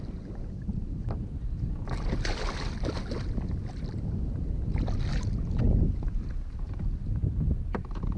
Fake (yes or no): no